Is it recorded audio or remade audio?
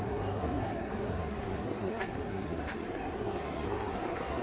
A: remade